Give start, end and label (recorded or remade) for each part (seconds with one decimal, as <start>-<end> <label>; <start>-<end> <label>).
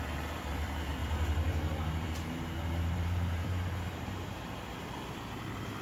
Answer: 0.0-1.0 recorded; 1.0-4.5 remade; 4.5-5.8 recorded